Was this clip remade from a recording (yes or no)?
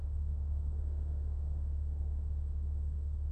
yes